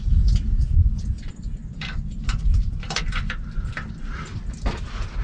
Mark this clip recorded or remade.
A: recorded